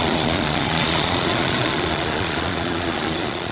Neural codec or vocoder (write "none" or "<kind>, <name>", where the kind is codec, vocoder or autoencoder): vocoder, Vocos